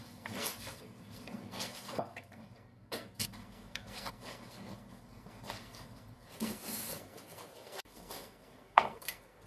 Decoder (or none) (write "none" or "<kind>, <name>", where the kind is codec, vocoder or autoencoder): codec, SNAC